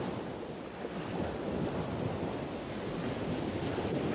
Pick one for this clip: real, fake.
real